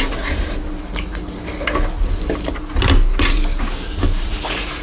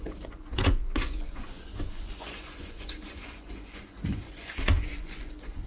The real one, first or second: first